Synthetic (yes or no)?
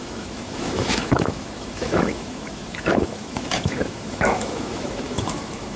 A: yes